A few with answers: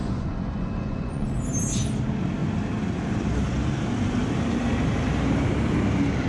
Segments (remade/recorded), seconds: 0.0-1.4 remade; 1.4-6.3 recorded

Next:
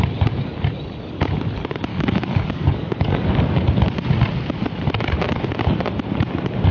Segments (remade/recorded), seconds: 0.0-1.9 recorded; 1.9-3.3 remade; 3.3-6.7 recorded

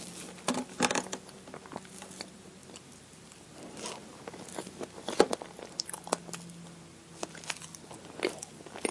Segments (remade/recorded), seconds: 0.0-8.9 recorded

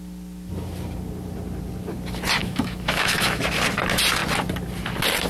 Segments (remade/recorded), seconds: 0.0-2.4 recorded; 2.4-3.4 remade; 3.4-5.3 recorded

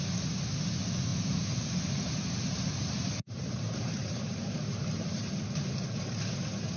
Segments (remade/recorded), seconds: 0.0-1.1 recorded; 1.1-5.2 remade; 5.2-6.8 recorded